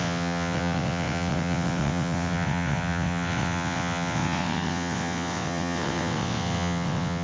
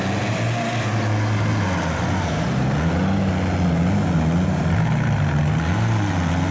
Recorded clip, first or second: second